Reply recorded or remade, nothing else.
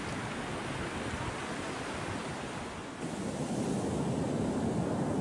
recorded